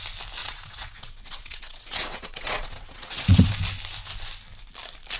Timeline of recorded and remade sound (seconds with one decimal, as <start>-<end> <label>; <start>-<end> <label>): 0.0-0.4 recorded; 0.4-3.5 remade; 3.5-5.2 recorded